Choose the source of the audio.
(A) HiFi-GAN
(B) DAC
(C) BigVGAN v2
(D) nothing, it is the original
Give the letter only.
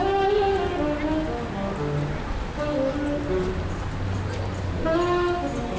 D